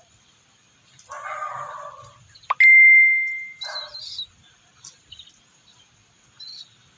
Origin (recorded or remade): recorded